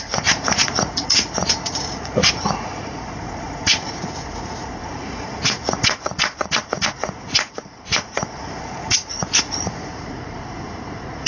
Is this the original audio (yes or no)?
no